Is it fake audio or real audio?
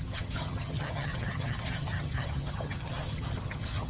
fake